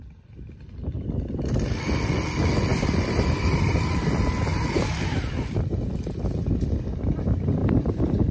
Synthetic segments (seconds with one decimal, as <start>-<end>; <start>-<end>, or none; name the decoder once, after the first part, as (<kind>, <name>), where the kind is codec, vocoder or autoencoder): 2.7-4.2 (vocoder, BigVGAN v2); 7.6-8.3